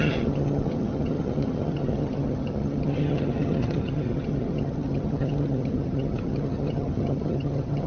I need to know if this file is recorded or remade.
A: remade